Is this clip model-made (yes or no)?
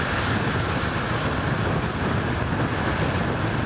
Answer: no